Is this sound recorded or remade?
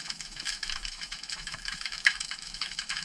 remade